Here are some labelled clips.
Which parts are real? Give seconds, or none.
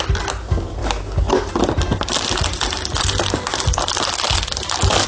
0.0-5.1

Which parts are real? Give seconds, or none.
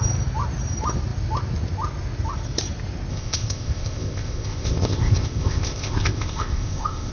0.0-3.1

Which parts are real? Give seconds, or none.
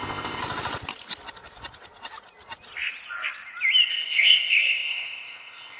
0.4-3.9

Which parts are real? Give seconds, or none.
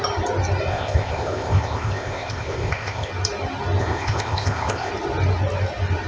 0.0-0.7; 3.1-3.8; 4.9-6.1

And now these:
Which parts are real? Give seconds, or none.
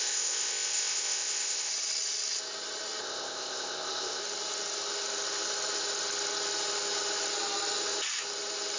1.7-3.0; 4.2-8.8